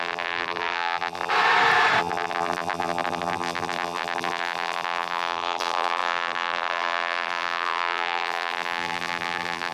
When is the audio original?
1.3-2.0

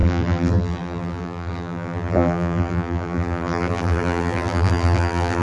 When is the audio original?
none

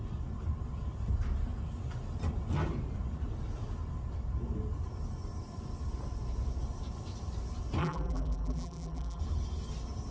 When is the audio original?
0.0-7.8; 9.2-10.1

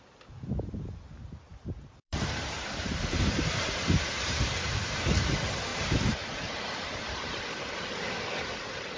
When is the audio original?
0.0-1.5; 5.3-5.7; 7.4-9.0

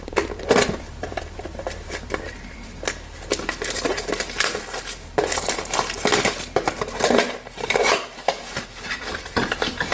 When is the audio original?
2.7-7.7; 8.2-9.0

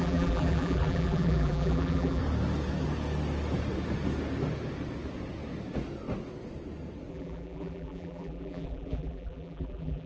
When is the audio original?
2.2-7.1

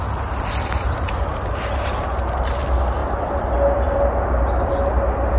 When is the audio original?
0.0-0.6; 1.2-3.0